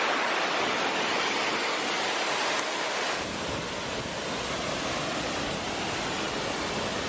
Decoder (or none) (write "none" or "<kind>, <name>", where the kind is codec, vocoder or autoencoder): none